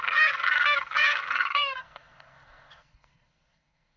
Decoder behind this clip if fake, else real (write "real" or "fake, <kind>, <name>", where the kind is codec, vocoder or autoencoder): fake, codec, SNAC